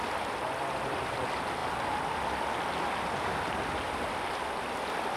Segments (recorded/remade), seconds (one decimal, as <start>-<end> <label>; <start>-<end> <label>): 0.0-5.2 recorded